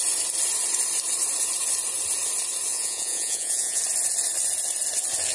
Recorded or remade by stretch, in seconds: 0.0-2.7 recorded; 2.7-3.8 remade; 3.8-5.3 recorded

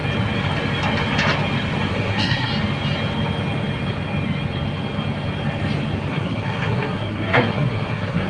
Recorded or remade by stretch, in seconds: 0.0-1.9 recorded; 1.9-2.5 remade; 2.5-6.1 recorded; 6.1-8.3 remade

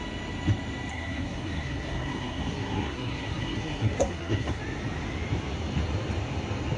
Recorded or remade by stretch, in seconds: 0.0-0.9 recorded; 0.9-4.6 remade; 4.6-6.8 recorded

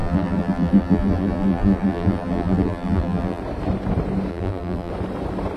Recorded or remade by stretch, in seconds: 0.0-3.4 remade; 3.4-4.3 recorded; 4.3-4.9 remade; 4.9-5.6 recorded

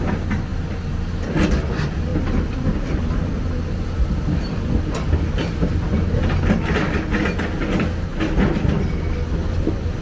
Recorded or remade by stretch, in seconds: 0.0-2.1 recorded; 2.1-5.1 remade; 5.1-10.0 recorded